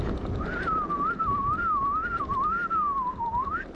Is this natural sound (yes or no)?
yes